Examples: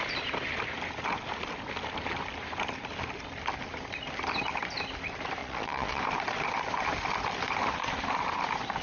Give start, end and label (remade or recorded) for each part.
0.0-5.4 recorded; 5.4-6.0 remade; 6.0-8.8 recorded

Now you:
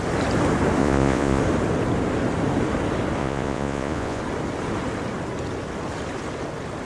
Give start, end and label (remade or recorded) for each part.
0.0-0.8 recorded; 0.8-1.4 remade; 1.4-3.2 recorded; 3.2-4.2 remade; 4.2-6.8 recorded

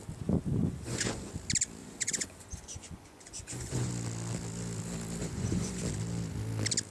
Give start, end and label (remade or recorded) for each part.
0.0-0.6 recorded; 0.6-1.3 remade; 1.3-1.8 recorded; 1.8-3.9 remade; 3.9-5.2 recorded; 5.2-5.8 remade; 5.8-6.9 recorded

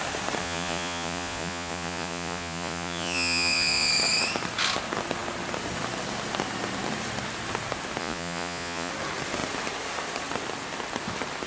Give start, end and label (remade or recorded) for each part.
0.0-0.4 recorded; 0.4-3.9 remade; 3.9-8.0 recorded; 8.0-8.9 remade; 8.9-11.5 recorded

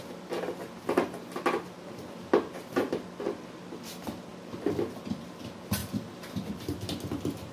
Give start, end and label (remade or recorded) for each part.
0.0-7.5 recorded

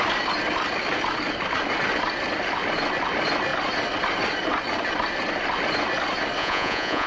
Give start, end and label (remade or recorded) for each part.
0.0-6.4 recorded; 6.4-7.1 remade

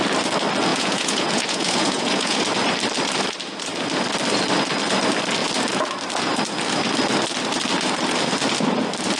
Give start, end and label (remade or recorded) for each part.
0.0-0.7 recorded; 0.7-2.4 remade; 2.4-9.2 recorded

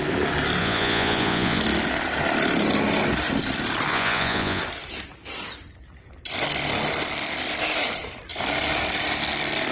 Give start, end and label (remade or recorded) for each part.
0.0-0.6 recorded; 0.6-1.6 remade; 1.6-3.9 recorded; 3.9-4.6 remade; 4.6-9.7 recorded